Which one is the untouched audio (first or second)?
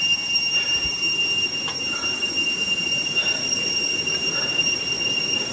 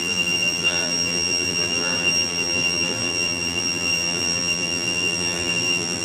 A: first